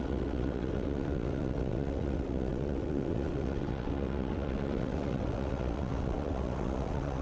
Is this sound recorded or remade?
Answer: remade